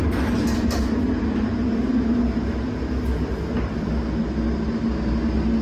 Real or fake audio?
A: real